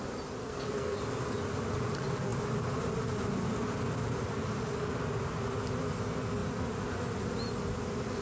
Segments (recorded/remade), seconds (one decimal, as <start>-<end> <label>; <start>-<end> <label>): 0.0-0.4 recorded; 0.4-1.0 remade; 1.0-8.2 recorded